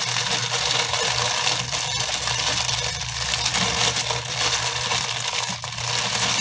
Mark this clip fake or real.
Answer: real